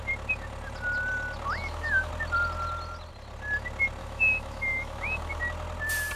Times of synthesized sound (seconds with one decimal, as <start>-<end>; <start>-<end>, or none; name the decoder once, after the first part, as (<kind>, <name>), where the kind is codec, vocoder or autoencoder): 1.6-2.1 (autoencoder, DAC-VAE); 4.0-5.4